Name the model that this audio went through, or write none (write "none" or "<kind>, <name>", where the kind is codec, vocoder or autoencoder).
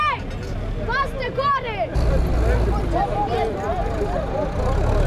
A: none